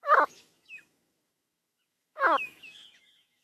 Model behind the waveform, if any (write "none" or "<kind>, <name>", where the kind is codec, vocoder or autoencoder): autoencoder, DAC-VAE